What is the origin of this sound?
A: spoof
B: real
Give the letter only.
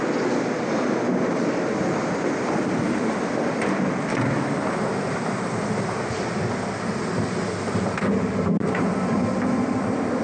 B